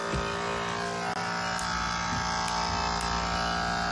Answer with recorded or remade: recorded